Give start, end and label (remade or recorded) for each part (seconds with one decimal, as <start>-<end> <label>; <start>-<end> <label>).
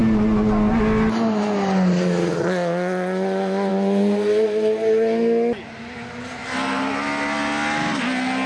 0.0-8.5 recorded